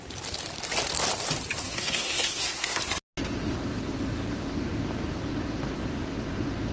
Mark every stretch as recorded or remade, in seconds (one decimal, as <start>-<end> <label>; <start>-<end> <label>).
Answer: 0.0-1.6 recorded; 1.6-2.8 remade; 2.8-6.7 recorded

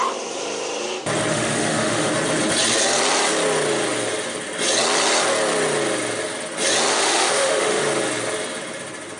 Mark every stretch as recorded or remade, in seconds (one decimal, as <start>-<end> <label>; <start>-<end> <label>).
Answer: 0.0-1.3 recorded; 1.3-2.1 remade; 2.1-6.9 recorded; 6.9-7.8 remade; 7.8-9.2 recorded